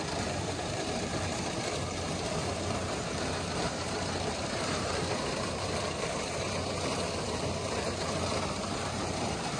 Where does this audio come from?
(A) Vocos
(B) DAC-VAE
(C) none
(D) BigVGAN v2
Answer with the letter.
D